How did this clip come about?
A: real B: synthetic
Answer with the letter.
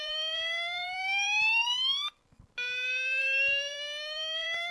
B